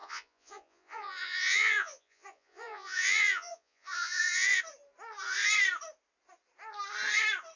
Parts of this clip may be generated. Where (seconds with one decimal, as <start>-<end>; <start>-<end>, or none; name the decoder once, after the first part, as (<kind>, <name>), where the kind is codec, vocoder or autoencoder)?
0.0-4.6 (vocoder, Vocos)